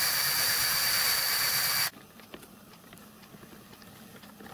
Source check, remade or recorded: recorded